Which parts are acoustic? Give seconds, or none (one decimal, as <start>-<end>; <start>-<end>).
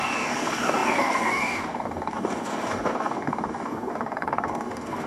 none